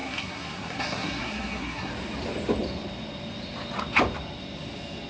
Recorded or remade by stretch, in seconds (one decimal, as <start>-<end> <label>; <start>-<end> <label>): 0.0-1.9 remade; 1.9-5.1 recorded